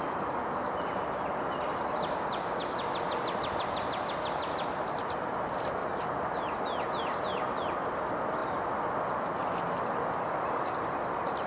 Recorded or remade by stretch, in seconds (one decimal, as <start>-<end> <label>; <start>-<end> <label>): 0.0-11.5 recorded